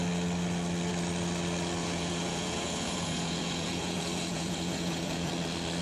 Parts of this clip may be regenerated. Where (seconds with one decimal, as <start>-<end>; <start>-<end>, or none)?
1.8-5.3